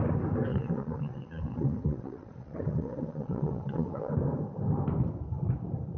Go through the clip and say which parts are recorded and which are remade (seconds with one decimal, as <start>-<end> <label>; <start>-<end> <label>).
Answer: 0.0-0.5 recorded; 0.5-4.1 remade; 4.1-6.0 recorded